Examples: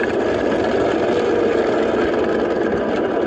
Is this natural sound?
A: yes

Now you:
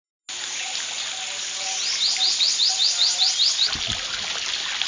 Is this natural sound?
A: yes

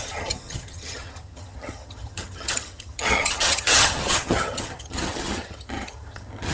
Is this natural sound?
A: no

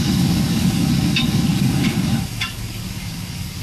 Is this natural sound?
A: no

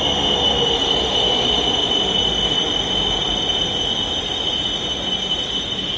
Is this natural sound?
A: yes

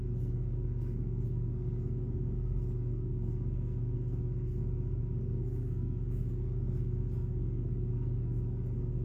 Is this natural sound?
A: no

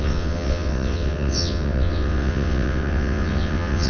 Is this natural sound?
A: no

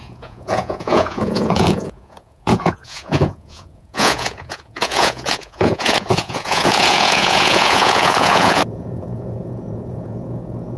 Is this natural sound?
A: no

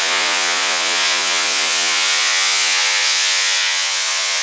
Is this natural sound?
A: no